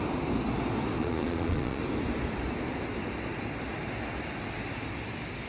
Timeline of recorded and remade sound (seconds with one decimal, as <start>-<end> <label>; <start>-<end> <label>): 0.0-1.0 recorded; 1.0-1.8 remade; 1.8-5.5 recorded